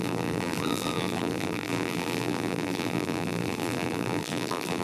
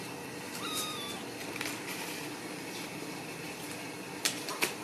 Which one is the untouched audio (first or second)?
second